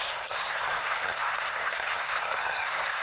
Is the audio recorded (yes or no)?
no